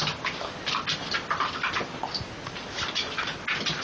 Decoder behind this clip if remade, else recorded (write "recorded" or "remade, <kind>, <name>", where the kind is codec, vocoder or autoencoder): recorded